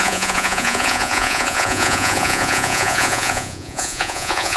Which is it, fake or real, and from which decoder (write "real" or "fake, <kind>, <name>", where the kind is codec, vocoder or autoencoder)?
fake, vocoder, Vocos